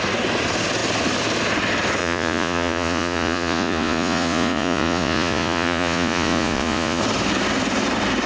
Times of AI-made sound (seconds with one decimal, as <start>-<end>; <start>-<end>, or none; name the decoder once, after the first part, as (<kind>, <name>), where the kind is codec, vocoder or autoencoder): 2.0-7.0 (vocoder, Vocos)